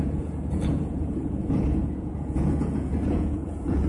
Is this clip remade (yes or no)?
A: yes